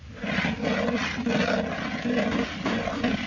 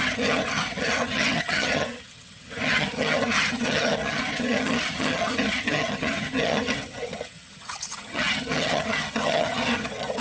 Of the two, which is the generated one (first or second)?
second